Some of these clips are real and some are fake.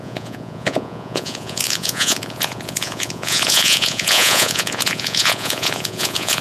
fake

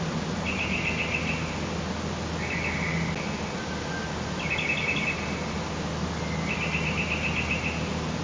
real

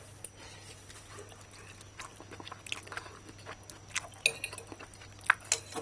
real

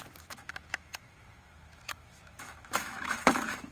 fake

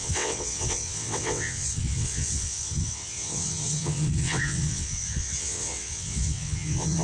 fake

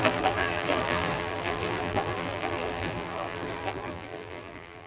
fake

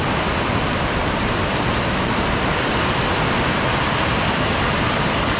real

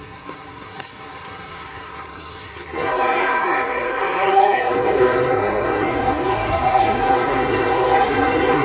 fake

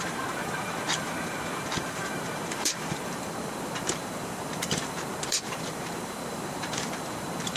fake